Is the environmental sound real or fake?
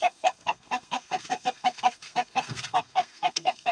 fake